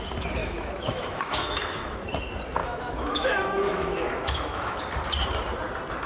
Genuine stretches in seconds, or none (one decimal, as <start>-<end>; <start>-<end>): 0.0-0.4; 2.1-2.6; 4.8-6.1